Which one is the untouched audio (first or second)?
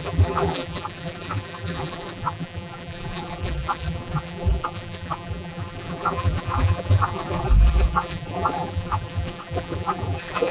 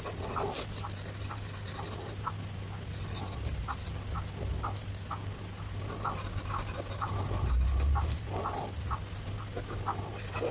second